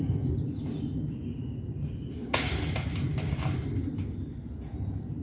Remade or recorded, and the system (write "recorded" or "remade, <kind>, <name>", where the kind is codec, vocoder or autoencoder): recorded